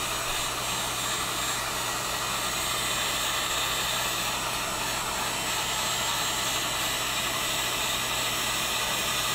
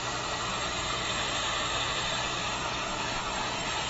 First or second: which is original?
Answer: first